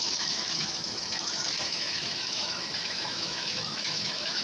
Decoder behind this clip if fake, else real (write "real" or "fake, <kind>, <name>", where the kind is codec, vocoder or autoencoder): fake, autoencoder, DAC-VAE